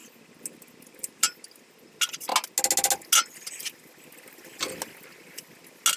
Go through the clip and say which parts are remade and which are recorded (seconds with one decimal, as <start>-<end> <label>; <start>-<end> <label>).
0.0-6.0 recorded